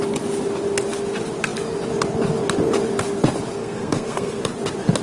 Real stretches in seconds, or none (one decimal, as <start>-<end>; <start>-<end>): 0.0-3.6; 4.4-5.0